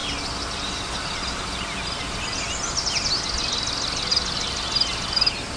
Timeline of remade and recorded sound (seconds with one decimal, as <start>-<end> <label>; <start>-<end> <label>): 0.0-5.6 recorded